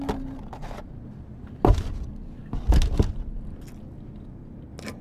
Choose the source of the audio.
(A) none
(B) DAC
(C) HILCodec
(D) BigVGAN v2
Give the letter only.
A